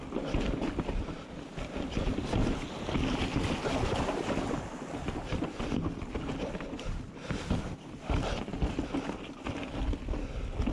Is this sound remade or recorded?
recorded